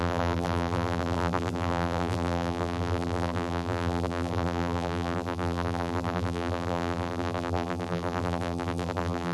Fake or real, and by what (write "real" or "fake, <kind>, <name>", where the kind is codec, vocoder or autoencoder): fake, vocoder, BigVGAN v2